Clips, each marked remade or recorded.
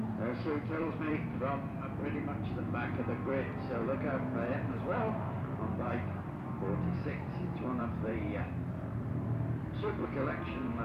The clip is remade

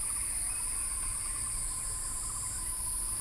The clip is recorded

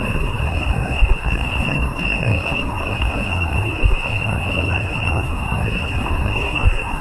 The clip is remade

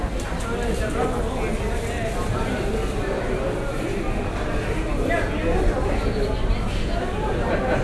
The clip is recorded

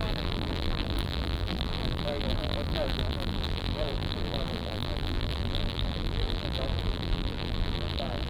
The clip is remade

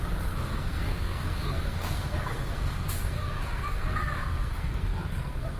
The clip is remade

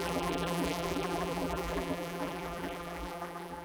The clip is remade